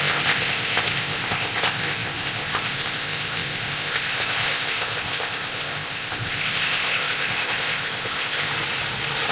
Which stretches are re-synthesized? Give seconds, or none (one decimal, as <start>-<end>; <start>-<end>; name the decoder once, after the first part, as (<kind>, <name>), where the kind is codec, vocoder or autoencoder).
0.0-8.5 (codec, ZipCodec)

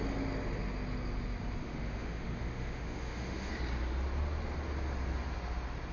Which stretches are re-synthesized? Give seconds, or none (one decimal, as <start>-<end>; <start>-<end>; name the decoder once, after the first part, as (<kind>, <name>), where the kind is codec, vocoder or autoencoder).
1.6-3.5 (autoencoder, DAC-VAE)

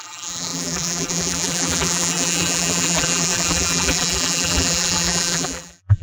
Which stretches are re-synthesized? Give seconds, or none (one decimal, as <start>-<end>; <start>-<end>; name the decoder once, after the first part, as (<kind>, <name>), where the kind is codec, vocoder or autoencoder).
0.0-6.0 (vocoder, BigVGAN v2)

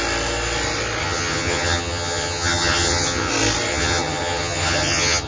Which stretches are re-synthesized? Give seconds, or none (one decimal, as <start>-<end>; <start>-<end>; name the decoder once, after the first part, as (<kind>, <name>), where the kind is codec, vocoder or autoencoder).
1.0-3.3 (vocoder, HiFi-GAN); 3.7-5.3

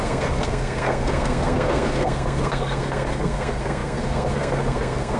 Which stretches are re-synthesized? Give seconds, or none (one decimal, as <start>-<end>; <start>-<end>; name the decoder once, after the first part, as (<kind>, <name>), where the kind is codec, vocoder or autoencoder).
0.0-5.2 (codec, SNAC)

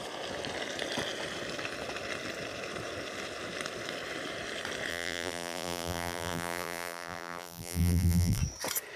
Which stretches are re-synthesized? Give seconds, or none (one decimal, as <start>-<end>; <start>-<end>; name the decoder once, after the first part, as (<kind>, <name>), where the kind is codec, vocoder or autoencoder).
4.9-8.4 (vocoder, BigVGAN v2)